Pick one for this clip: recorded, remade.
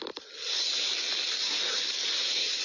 recorded